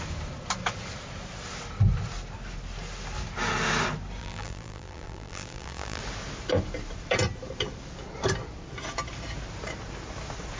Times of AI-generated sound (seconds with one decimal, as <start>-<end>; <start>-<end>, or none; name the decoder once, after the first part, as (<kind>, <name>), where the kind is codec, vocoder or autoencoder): 4.2-6.0 (vocoder, BigVGAN v2)